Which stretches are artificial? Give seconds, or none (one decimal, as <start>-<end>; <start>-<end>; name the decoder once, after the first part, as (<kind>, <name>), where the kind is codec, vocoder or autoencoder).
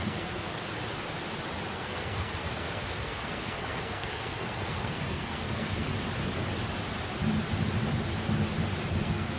0.0-0.7 (codec, SNAC); 1.7-5.9; 8.9-9.4